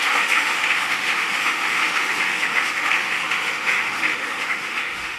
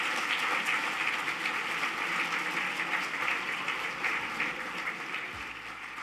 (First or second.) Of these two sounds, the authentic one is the second